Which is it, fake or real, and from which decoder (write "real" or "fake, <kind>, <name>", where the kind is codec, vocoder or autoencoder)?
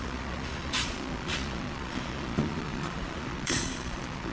fake, vocoder, Vocos